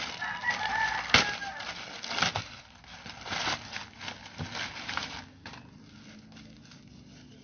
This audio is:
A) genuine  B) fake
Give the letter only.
A